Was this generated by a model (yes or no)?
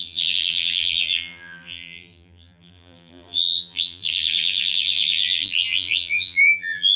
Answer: yes